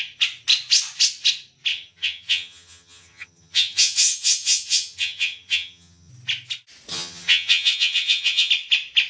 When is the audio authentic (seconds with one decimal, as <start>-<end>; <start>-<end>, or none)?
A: 0.0-1.7; 6.1-6.9; 8.5-9.1